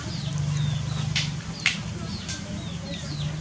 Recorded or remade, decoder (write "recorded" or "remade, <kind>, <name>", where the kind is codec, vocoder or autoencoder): recorded